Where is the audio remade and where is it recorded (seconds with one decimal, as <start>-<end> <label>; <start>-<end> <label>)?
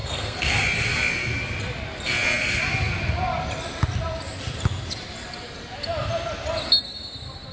0.0-0.6 remade; 0.6-7.5 recorded